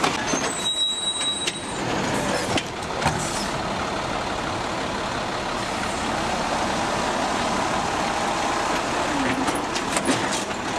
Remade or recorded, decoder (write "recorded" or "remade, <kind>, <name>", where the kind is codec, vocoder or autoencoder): recorded